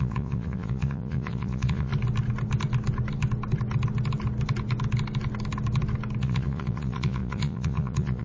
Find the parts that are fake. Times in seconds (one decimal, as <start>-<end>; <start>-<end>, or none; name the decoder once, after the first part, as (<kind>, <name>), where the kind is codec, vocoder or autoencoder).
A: 0.0-1.9 (vocoder, Vocos); 6.2-8.2